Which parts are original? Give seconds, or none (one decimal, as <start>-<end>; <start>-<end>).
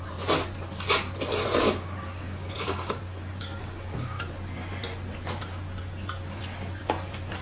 0.0-1.6; 3.0-3.6; 4.2-7.4